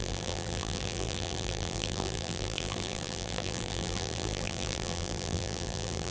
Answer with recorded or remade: remade